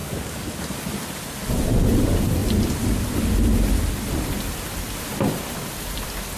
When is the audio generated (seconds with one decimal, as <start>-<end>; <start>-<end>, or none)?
0.0-0.5